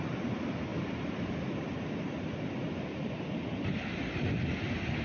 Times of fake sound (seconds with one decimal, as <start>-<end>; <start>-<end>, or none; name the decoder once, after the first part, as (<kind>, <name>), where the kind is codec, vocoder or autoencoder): none